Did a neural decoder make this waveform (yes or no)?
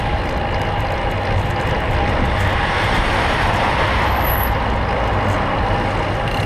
no